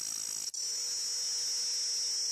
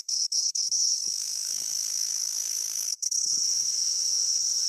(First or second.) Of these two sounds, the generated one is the second